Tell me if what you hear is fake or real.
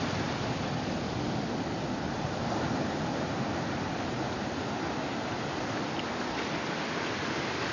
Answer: real